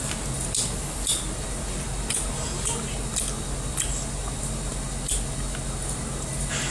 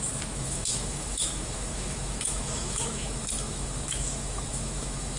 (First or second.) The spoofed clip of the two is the second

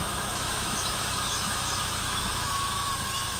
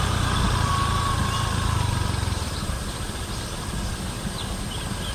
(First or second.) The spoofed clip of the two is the first